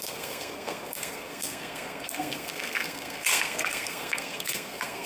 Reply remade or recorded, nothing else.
remade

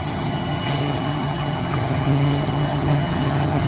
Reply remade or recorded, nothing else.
remade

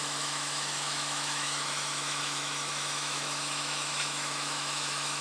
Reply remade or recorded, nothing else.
remade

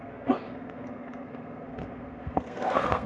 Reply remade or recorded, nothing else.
remade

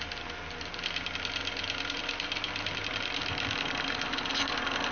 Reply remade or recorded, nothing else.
recorded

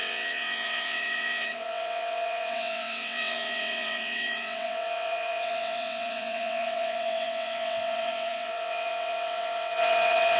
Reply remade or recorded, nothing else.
remade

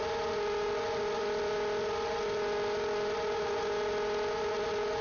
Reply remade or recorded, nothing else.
recorded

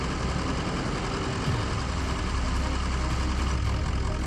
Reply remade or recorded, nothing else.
recorded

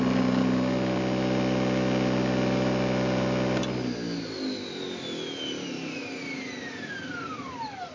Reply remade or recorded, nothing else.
recorded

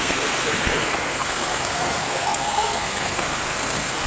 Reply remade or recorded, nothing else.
remade